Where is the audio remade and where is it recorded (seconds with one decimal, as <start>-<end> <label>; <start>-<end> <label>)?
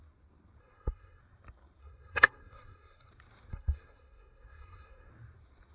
0.0-0.6 recorded; 0.6-1.2 remade; 1.2-1.8 recorded; 1.8-3.1 remade; 3.1-3.5 recorded; 3.5-5.1 remade; 5.1-5.7 recorded